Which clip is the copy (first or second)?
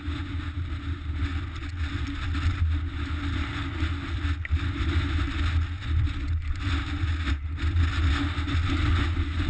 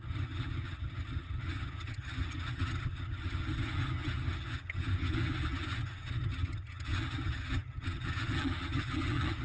second